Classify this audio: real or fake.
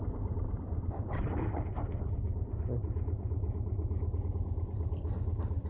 real